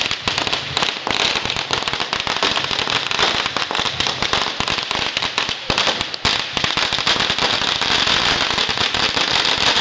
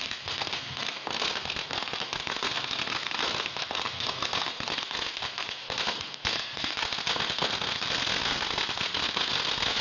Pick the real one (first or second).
first